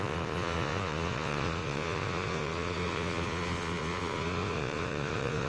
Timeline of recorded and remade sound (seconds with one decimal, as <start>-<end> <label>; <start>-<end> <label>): 0.0-5.5 remade